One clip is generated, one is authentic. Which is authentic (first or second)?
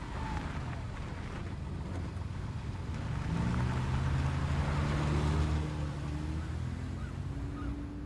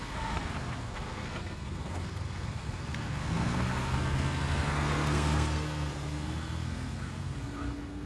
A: first